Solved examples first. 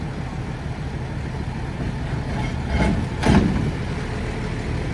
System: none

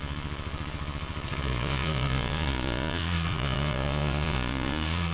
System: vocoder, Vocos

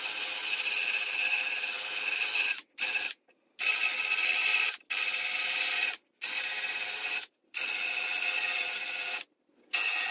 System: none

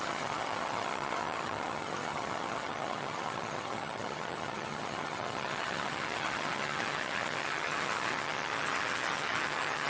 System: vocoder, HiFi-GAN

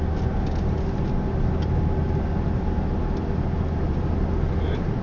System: none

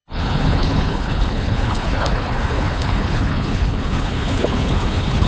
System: codec, HILCodec